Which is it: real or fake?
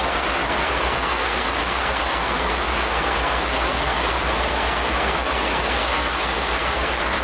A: fake